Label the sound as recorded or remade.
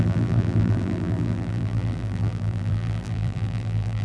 remade